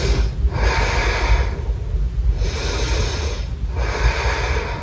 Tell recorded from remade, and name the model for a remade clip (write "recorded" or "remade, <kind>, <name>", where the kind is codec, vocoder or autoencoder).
recorded